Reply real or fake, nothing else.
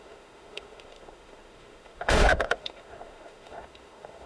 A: fake